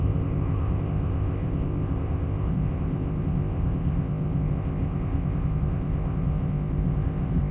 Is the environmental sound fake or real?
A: fake